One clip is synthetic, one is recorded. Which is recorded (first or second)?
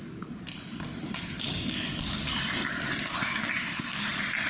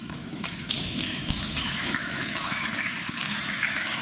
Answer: first